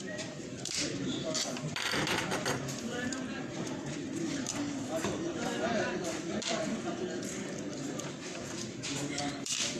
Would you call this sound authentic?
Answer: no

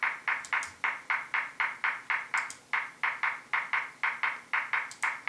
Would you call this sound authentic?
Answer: yes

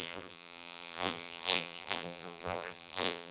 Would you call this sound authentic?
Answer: no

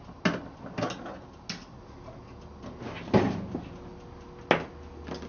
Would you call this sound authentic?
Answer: yes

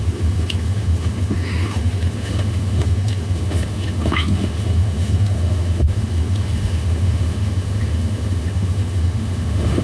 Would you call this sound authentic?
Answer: no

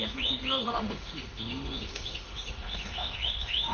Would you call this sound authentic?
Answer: no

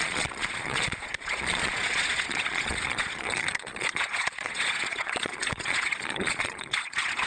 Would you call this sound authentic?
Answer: no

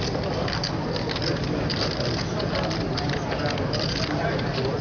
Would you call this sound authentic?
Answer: yes